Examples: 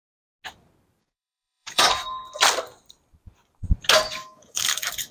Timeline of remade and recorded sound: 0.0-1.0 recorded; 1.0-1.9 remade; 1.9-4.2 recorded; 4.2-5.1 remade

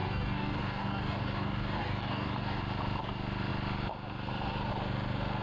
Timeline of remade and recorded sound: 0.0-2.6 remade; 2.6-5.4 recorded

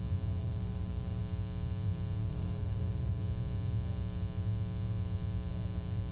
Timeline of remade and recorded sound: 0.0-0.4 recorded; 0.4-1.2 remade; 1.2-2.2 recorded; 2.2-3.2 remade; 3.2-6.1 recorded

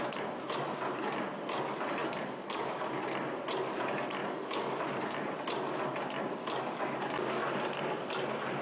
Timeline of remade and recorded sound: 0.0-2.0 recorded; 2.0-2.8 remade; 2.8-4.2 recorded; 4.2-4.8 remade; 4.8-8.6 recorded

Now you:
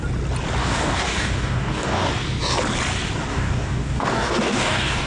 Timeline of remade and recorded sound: 0.0-0.6 recorded; 0.6-2.1 remade; 2.1-3.3 recorded; 3.3-5.1 remade